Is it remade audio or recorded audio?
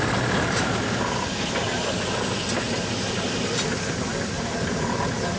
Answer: recorded